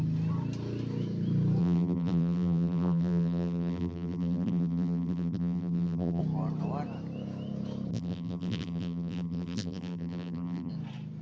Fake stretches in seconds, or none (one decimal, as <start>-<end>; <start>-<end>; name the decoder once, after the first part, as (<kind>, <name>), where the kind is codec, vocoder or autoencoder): 1.6-6.2 (vocoder, BigVGAN v2); 7.9-10.7